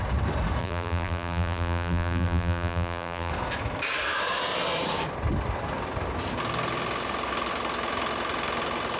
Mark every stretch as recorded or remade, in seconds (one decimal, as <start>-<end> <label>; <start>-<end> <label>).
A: 0.0-0.6 recorded; 0.6-3.3 remade; 3.3-9.0 recorded